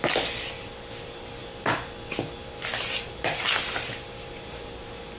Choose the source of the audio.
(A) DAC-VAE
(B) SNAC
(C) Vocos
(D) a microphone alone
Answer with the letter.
D